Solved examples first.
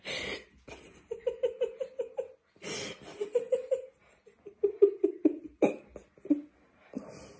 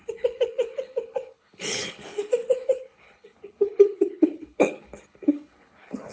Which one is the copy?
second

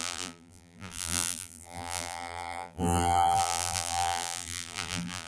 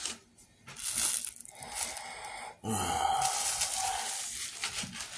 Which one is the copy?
first